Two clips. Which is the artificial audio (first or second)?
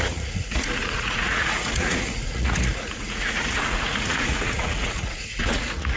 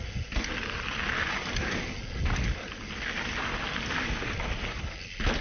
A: first